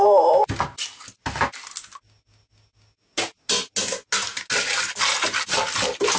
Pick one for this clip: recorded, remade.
recorded